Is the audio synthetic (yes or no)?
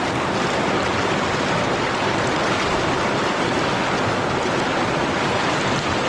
no